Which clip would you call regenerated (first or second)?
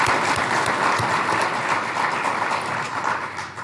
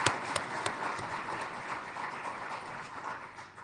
second